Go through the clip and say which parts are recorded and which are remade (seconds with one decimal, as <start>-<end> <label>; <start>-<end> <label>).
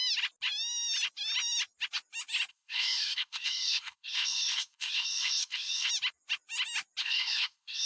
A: 0.0-2.5 recorded; 2.5-5.9 remade; 5.9-7.0 recorded; 7.0-7.9 remade